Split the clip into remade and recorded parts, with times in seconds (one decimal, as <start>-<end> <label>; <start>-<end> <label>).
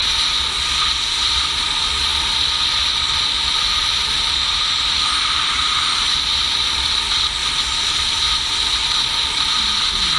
0.0-1.2 recorded; 1.2-7.4 remade; 7.4-7.9 recorded; 7.9-10.2 remade